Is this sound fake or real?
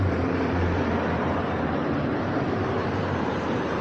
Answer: fake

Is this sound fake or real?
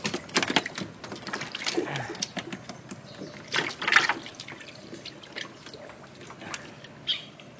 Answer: real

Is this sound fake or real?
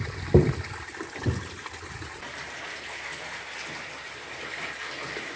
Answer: real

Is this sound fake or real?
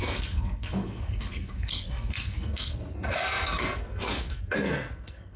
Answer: fake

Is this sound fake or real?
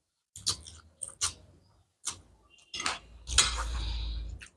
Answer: real